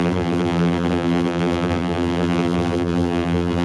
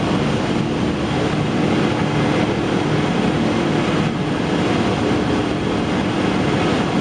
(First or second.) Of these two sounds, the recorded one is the second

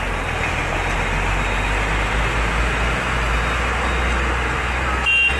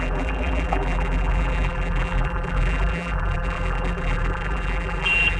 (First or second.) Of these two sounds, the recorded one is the first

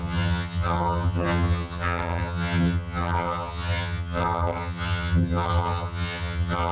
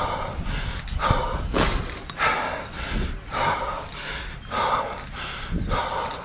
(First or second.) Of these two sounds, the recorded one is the second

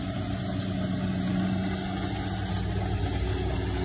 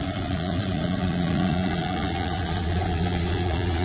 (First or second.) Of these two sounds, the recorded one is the first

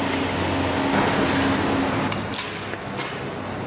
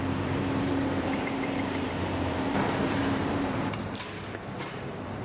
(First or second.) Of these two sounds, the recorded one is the first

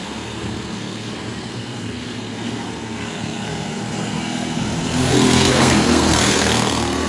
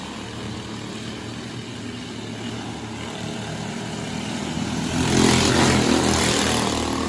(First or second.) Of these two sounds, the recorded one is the second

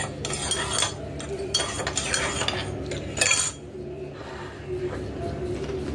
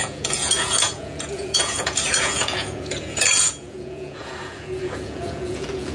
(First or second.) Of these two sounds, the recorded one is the first